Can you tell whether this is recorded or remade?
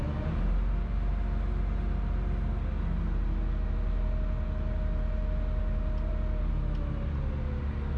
recorded